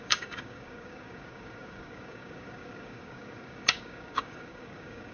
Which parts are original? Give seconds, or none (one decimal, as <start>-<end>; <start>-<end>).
none